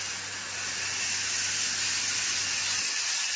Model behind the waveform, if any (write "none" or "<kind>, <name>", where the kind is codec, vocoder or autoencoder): none